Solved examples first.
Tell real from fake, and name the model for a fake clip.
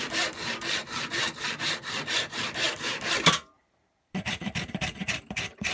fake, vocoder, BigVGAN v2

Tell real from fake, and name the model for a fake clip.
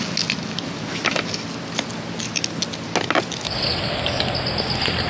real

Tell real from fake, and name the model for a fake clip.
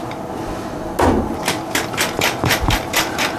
real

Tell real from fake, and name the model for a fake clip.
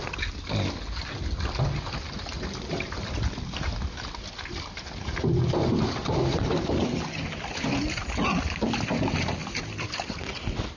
real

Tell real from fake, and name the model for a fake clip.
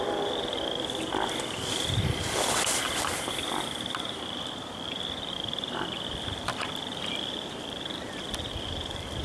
fake, vocoder, BigVGAN v2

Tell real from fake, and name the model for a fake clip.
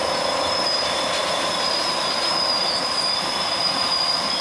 fake, vocoder, BigVGAN v2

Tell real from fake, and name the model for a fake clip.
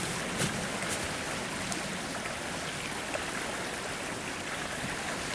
real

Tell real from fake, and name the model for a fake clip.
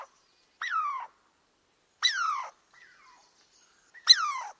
real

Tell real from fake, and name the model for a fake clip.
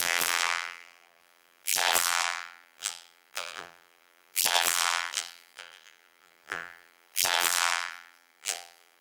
fake, vocoder, BigVGAN v2